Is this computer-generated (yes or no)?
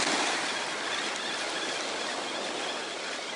no